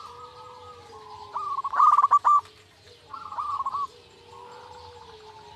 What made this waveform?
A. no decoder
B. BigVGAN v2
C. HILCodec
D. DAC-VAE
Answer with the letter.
A